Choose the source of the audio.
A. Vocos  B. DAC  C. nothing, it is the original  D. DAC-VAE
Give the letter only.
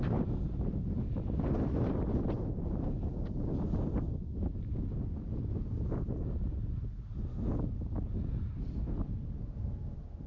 C